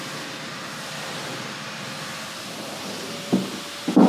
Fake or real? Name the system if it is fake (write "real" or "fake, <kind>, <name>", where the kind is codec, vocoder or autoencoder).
real